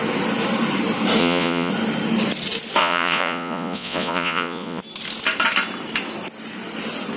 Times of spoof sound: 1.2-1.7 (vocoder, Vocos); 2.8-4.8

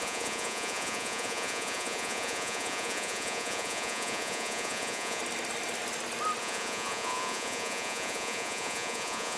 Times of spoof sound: 0.0-5.2 (vocoder, Vocos); 6.4-9.4

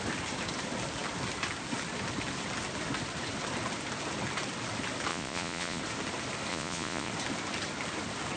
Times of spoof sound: 5.1-5.8 (vocoder, Vocos); 6.5-7.1

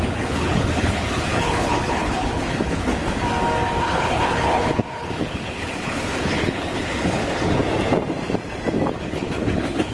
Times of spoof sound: 0.0-2.9 (codec, HILCodec); 3.8-7.6; 8.9-9.9

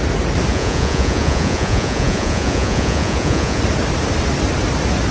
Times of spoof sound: 0.5-3.6 (vocoder, Vocos)